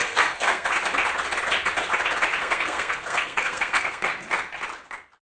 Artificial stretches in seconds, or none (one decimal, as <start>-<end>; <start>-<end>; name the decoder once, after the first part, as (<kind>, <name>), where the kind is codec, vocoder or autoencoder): 0.0-0.7 (codec, SNAC); 2.4-4.1